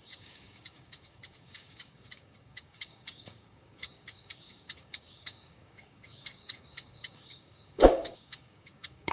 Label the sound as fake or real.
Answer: fake